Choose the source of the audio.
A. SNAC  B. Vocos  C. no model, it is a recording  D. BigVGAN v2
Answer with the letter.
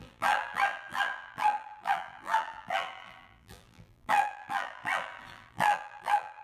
D